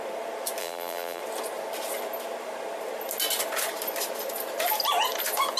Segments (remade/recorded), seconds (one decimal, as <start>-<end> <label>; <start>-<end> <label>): 0.0-0.6 recorded; 0.6-1.2 remade; 1.2-5.6 recorded